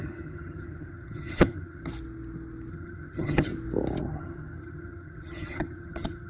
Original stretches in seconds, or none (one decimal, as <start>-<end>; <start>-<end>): 1.9-2.7; 3.5-4.0

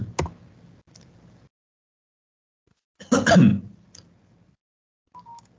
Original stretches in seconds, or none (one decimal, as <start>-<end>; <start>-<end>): 0.0-5.6

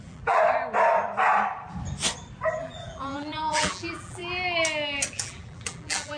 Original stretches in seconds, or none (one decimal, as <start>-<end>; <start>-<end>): 0.4-2.6; 4.2-5.1